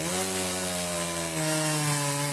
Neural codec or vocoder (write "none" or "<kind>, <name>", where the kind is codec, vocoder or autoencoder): none